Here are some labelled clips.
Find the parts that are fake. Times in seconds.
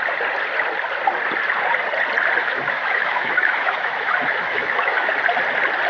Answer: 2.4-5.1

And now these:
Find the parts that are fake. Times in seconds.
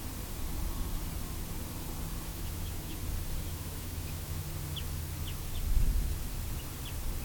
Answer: 2.3-3.0; 3.5-4.4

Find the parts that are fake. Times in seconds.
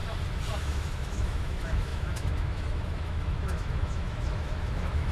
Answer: 0.6-5.1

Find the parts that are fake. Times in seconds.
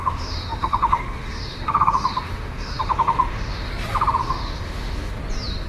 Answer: 0.0-3.7; 4.2-5.2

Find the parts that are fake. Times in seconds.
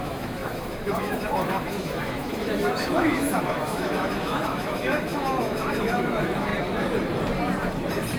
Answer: 0.0-6.5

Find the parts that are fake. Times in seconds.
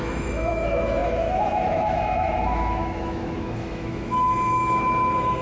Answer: 0.0-5.4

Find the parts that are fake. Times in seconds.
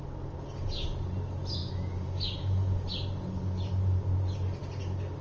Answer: 1.6-2.8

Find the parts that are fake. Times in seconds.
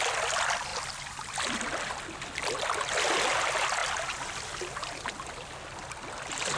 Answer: none